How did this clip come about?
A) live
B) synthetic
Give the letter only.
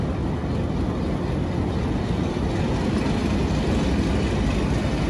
A